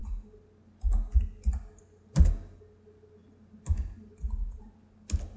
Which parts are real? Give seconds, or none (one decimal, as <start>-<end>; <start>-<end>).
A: 0.0-5.4